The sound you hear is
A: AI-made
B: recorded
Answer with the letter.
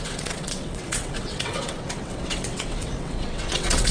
A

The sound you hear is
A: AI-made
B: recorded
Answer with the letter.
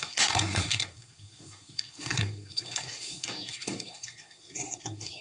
A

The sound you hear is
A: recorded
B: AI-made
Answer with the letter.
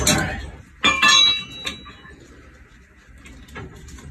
A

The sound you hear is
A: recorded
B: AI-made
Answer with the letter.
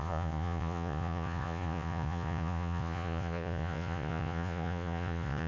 B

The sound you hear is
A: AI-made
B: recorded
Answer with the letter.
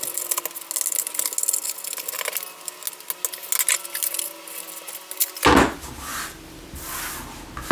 B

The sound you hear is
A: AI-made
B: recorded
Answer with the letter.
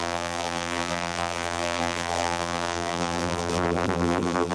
A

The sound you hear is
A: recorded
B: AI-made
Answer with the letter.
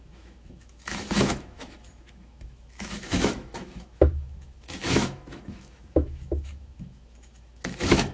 B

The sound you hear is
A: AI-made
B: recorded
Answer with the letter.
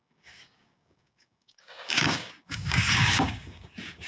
A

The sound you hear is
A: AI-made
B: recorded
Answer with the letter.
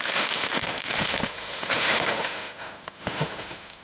A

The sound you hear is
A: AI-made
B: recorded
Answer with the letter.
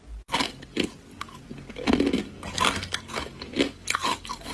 B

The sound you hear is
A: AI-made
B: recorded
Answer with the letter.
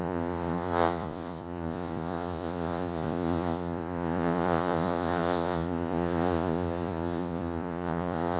A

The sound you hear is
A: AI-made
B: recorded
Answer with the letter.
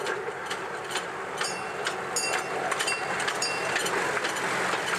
B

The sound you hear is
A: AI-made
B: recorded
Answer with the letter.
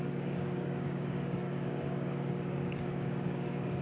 A